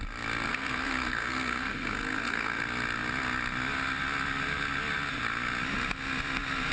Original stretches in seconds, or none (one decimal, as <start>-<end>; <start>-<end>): 0.0-0.5; 2.6-6.7